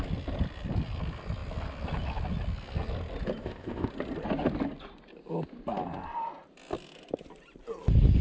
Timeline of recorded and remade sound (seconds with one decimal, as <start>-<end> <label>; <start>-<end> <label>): 0.0-3.4 recorded; 3.4-3.9 remade; 3.9-8.2 recorded

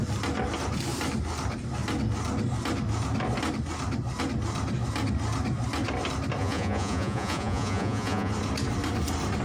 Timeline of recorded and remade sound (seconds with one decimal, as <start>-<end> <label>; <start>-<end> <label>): 0.0-6.4 recorded; 6.4-8.3 remade; 8.3-9.4 recorded

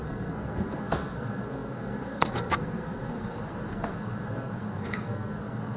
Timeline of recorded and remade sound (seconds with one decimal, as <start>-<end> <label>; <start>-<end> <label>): 0.0-5.8 remade

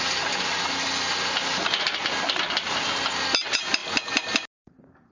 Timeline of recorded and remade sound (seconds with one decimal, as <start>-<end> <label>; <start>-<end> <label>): 0.0-5.1 recorded